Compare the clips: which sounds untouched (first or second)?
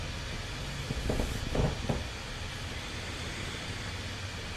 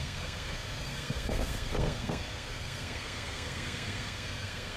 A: first